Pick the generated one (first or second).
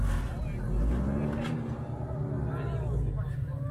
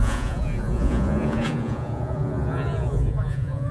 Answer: second